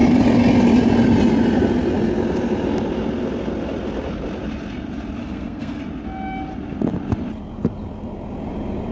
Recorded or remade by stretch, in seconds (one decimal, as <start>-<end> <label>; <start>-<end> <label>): 0.0-5.2 recorded; 5.2-5.8 remade; 5.8-8.9 recorded